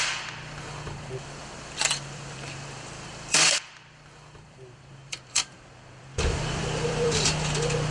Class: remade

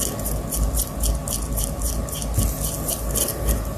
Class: recorded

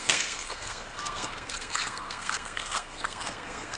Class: remade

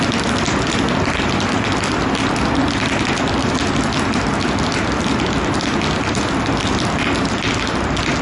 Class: recorded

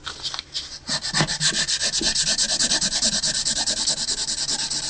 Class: recorded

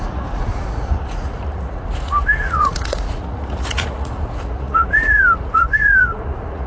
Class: remade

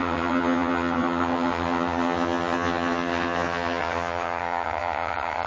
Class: remade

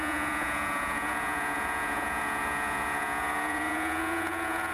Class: remade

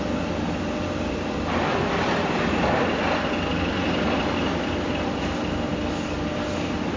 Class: recorded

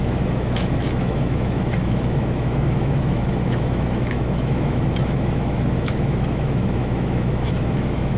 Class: remade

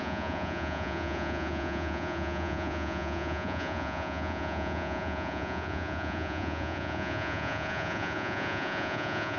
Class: remade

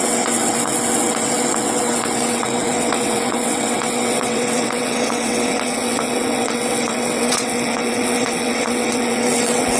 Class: remade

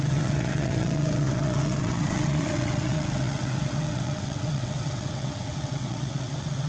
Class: remade